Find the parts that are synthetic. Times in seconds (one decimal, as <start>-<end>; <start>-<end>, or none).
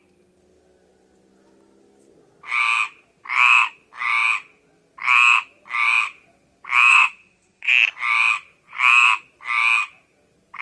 6.9-7.7